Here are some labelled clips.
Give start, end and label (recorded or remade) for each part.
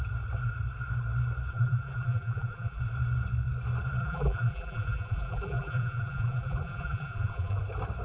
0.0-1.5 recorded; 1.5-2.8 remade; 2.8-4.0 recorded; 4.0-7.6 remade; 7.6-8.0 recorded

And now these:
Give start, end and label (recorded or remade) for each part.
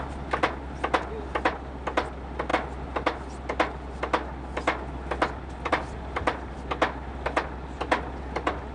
0.0-8.7 recorded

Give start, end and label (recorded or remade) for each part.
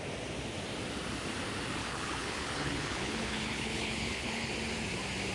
0.0-1.8 recorded; 1.8-4.5 remade; 4.5-5.3 recorded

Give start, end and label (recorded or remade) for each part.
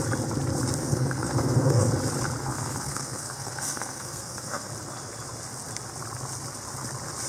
0.0-0.8 recorded; 0.8-1.9 remade; 1.9-2.4 recorded; 2.4-4.7 remade; 4.7-7.3 recorded